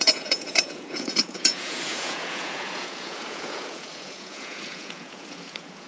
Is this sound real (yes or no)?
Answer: no